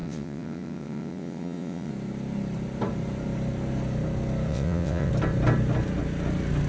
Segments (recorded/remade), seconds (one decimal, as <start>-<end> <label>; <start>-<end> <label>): 0.0-1.9 remade; 1.9-4.5 recorded; 4.5-5.1 remade; 5.1-6.7 recorded